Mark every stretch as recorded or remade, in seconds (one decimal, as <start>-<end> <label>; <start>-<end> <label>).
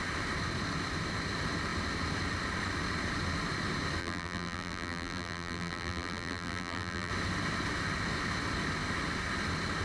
0.0-4.0 recorded; 4.0-7.1 remade; 7.1-9.8 recorded